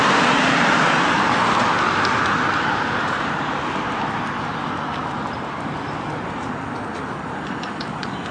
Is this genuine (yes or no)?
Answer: yes